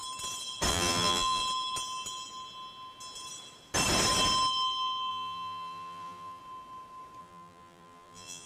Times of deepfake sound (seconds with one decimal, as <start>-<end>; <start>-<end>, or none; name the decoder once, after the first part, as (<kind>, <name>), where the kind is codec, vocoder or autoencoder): 0.7-1.4 (vocoder, BigVGAN v2); 5.1-6.4; 7.2-8.5